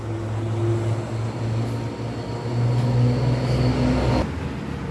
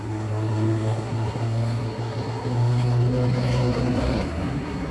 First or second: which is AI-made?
second